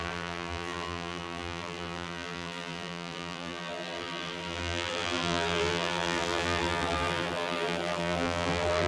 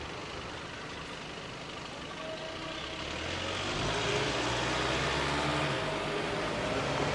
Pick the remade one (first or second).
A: first